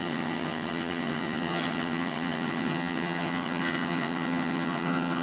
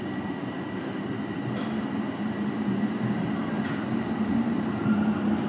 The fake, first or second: first